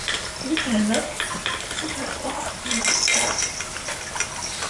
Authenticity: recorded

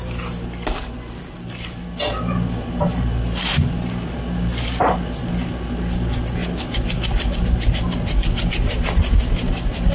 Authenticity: recorded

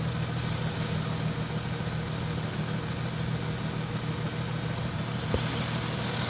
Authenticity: recorded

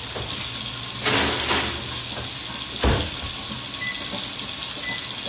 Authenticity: recorded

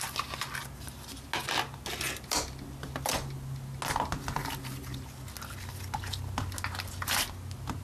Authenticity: recorded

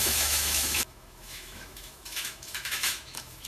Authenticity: remade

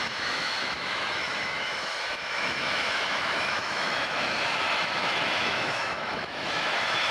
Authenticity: remade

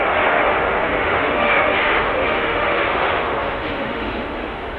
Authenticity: remade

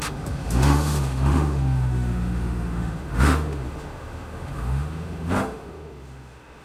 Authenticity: remade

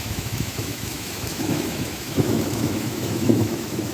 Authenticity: remade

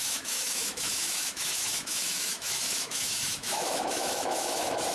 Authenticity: remade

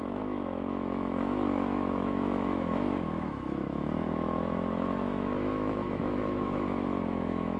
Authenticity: remade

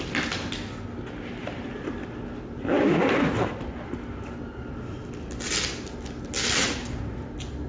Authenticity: recorded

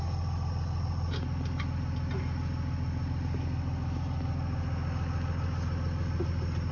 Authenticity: recorded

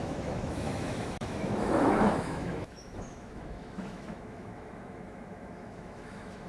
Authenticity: remade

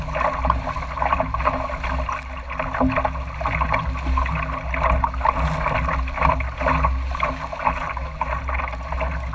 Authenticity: recorded